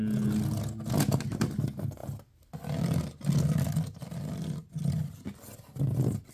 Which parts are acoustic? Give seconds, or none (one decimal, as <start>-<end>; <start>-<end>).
0.0-6.3